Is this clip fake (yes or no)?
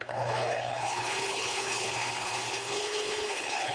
yes